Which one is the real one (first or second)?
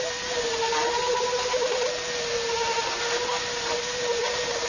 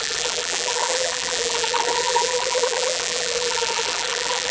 first